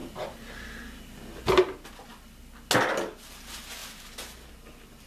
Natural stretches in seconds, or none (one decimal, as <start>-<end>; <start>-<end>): 0.0-5.1